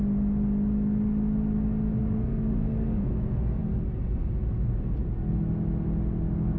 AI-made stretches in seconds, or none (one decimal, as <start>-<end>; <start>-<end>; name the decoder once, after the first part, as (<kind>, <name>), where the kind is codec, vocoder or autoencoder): 2.0-3.1 (codec, SNAC)